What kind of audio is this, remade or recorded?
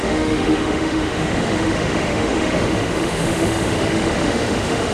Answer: remade